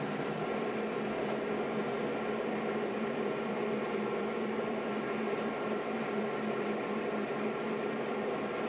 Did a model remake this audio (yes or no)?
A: yes